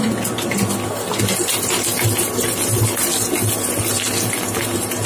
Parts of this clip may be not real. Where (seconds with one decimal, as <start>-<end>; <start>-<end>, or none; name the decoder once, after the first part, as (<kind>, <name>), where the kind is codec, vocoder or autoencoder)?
none

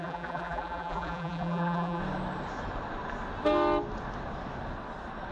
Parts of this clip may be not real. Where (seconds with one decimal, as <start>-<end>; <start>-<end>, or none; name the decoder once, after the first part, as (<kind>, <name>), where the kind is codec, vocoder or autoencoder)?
0.0-2.0 (vocoder, BigVGAN v2)

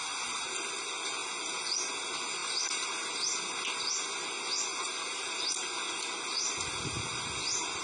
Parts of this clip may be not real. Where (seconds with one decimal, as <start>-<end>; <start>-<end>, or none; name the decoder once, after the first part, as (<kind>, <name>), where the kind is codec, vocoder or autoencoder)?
none

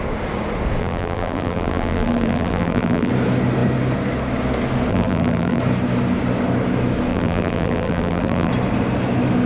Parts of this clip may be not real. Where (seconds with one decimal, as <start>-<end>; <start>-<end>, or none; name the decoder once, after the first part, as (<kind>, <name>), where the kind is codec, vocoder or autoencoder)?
0.8-3.1 (vocoder, BigVGAN v2); 4.9-5.6; 7.1-8.5

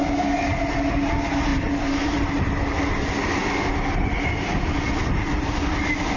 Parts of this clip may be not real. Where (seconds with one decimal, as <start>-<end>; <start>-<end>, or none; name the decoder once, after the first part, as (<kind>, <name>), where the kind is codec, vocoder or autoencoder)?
1.5-2.3 (vocoder, BigVGAN v2)